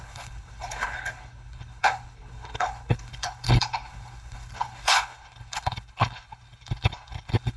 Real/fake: fake